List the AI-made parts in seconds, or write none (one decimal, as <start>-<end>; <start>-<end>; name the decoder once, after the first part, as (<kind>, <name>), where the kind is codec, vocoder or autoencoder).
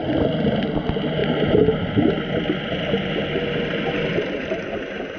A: none